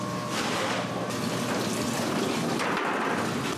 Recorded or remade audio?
recorded